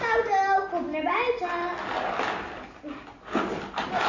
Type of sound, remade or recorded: recorded